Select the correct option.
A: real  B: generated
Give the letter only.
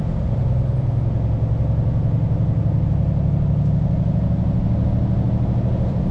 A